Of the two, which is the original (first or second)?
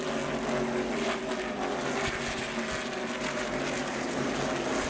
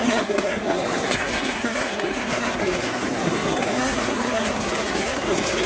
first